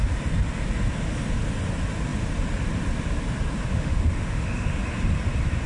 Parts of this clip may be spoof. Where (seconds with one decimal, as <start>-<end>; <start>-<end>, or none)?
3.7-4.8